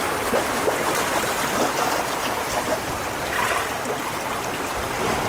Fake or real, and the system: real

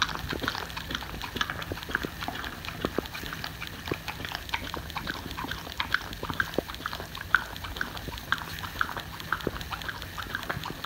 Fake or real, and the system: real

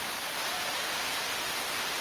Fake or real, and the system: real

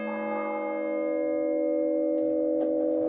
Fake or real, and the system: real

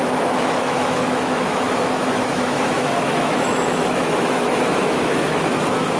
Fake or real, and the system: fake, autoencoder, DAC-VAE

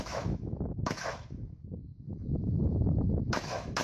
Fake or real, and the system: fake, autoencoder, DAC-VAE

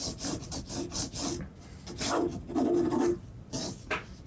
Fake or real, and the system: real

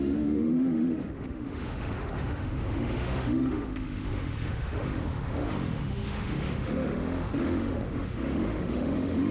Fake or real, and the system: fake, autoencoder, DAC-VAE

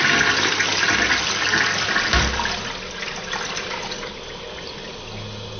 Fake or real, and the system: real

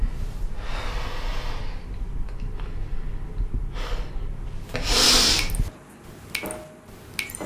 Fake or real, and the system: real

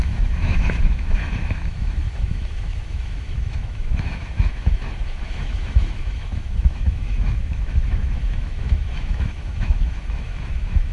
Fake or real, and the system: fake, autoencoder, DAC-VAE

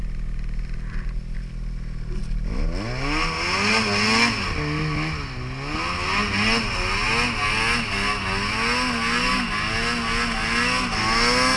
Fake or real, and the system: real